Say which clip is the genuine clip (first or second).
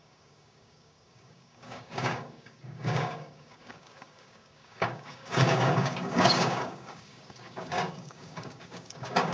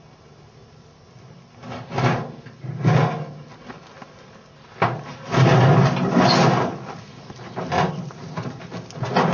second